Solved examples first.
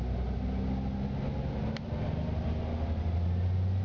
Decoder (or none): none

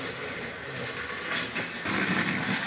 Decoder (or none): none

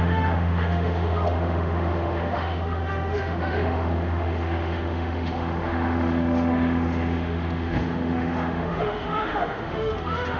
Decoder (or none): autoencoder, DAC-VAE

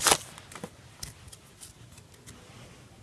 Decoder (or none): none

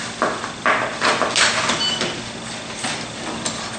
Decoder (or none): none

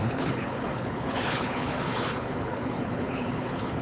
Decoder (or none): codec, HILCodec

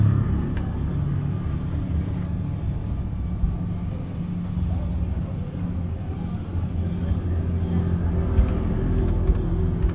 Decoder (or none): none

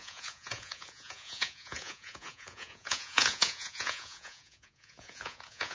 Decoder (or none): vocoder, Vocos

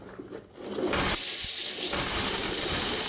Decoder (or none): none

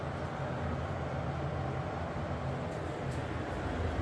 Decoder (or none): none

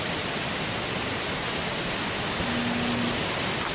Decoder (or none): none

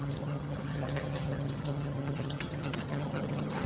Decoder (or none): vocoder, HiFi-GAN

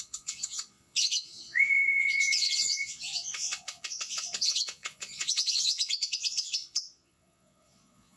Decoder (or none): vocoder, Vocos